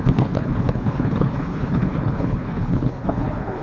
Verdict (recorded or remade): remade